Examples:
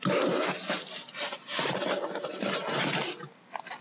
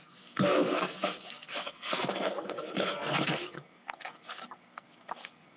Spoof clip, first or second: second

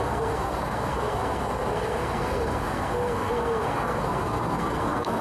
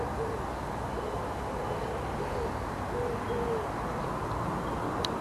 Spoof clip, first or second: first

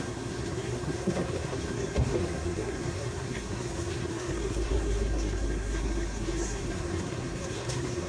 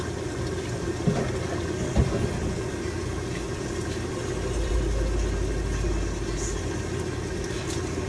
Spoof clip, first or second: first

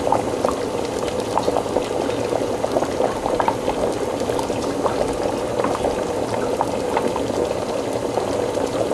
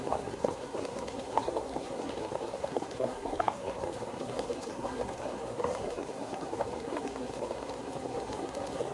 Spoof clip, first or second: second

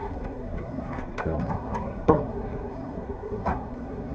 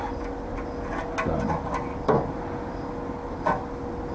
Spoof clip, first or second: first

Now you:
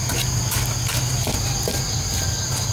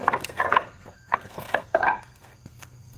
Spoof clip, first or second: second